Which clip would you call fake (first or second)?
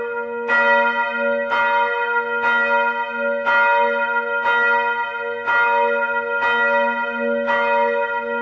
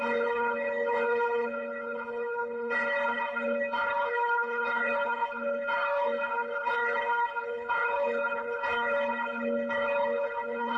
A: second